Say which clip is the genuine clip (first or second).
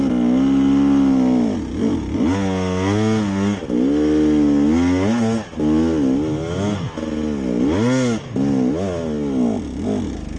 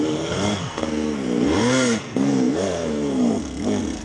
first